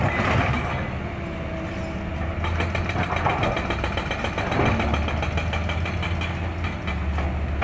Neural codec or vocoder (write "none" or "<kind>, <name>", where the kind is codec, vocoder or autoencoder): none